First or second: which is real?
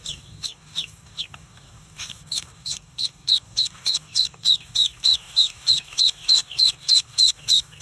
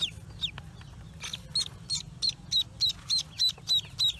second